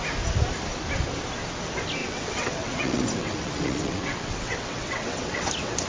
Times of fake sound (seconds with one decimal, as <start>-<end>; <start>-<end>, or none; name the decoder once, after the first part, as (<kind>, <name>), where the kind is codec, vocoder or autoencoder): 2.0-5.5 (vocoder, WaveNeXt)